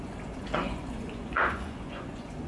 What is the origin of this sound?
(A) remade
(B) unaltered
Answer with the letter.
A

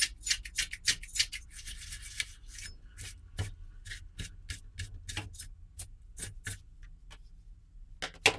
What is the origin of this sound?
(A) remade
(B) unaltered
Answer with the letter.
B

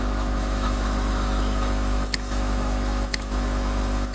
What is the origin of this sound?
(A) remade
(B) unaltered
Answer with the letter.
A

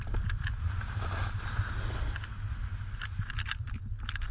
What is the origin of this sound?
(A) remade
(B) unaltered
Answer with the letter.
B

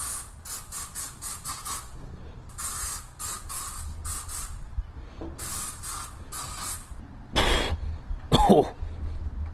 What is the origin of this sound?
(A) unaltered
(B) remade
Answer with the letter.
A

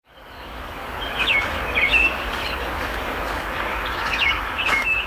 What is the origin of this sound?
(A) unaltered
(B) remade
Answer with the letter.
B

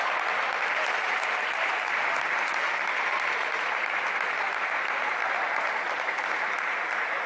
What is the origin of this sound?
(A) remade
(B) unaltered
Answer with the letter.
A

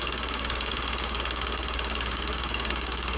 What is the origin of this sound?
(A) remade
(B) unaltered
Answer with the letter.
A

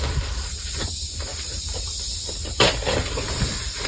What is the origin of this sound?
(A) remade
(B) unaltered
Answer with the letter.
B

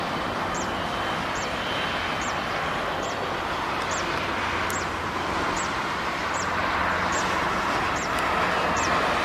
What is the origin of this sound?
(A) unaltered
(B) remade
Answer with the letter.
A